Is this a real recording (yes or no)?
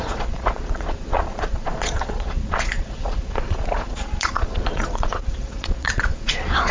no